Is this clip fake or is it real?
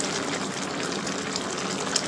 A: real